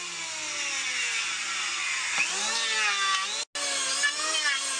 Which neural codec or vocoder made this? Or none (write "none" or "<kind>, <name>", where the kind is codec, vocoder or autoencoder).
none